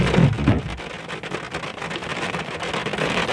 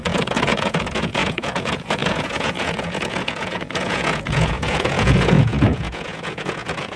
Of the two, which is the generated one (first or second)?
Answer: second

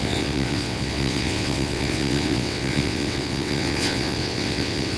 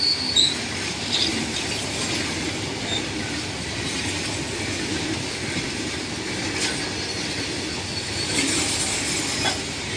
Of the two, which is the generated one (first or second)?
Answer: first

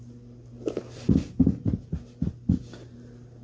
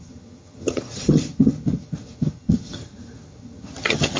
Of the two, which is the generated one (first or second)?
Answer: second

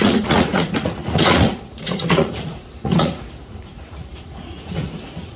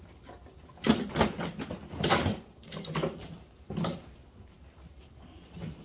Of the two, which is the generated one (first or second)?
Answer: first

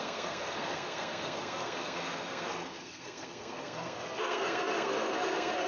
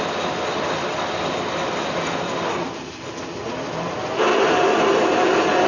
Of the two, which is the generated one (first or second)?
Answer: first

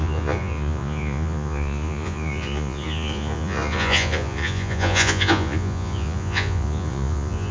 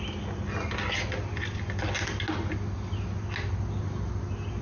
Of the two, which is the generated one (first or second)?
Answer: first